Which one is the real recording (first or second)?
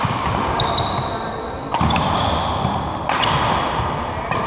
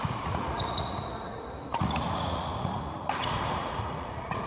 first